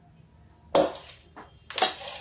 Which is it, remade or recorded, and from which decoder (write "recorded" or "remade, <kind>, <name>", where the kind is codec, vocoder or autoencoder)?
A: recorded